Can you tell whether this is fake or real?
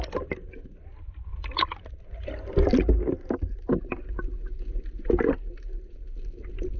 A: real